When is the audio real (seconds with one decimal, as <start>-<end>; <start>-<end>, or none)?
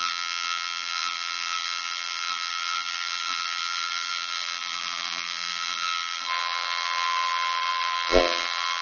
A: none